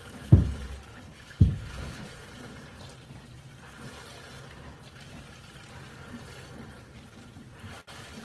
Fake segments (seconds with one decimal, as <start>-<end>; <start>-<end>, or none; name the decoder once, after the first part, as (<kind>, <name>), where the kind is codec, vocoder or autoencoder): 0.9-2.2 (codec, HILCodec)